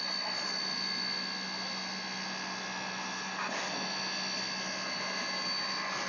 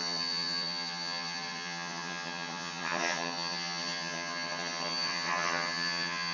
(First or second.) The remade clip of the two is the second